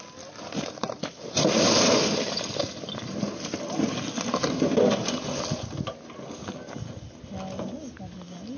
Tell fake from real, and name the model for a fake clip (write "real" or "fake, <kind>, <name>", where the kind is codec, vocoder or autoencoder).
real